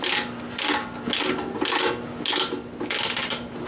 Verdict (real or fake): real